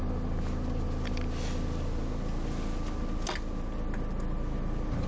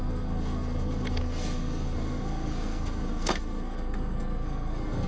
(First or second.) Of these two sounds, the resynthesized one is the second